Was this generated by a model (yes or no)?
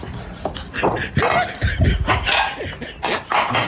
no